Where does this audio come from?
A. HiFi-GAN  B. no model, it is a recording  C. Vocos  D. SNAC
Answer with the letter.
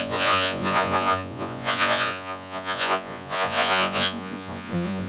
C